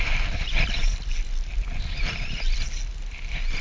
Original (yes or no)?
yes